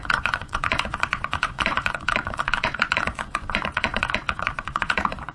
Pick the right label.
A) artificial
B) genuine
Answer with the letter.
A